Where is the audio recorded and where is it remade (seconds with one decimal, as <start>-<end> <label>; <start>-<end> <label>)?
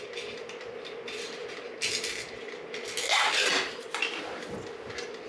0.0-5.3 recorded